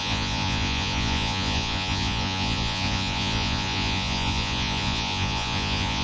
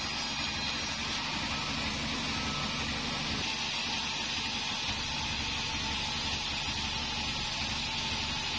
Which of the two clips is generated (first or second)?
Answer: first